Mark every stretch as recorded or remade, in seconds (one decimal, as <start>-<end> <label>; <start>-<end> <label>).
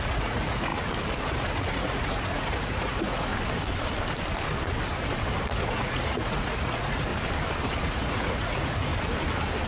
0.0-0.7 remade; 0.7-1.5 recorded; 1.5-3.3 remade; 3.3-5.4 recorded; 5.4-7.1 remade; 7.1-7.8 recorded; 7.8-8.9 remade; 8.9-9.7 recorded